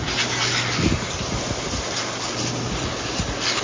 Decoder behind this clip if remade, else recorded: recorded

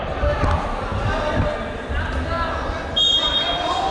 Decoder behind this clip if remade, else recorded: recorded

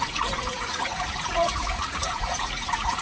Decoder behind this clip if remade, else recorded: remade, vocoder, Vocos